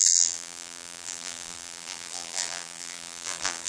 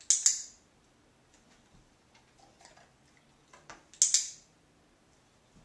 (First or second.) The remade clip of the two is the first